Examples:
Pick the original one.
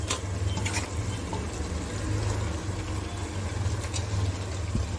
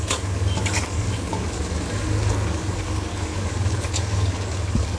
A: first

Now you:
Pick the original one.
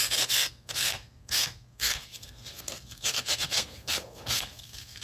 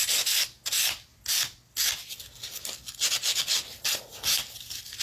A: second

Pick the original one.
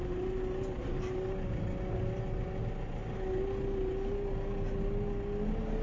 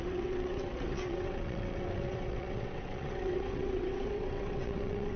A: first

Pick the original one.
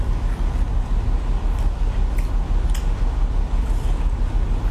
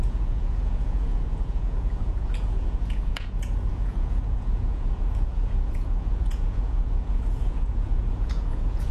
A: first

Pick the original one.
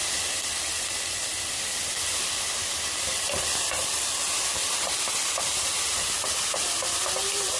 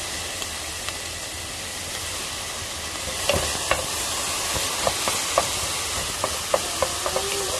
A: second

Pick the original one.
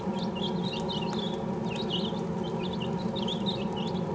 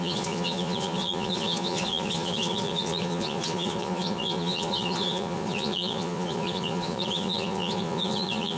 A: first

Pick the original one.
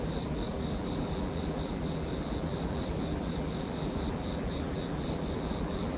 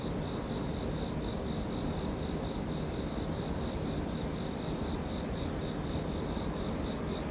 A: second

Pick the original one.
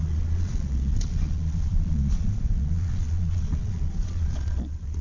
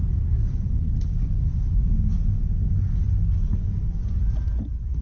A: second